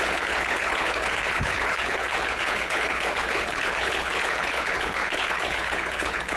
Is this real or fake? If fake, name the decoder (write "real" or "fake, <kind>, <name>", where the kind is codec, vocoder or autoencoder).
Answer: fake, codec, HILCodec